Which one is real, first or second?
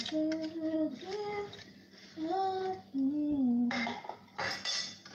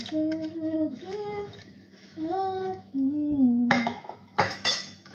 first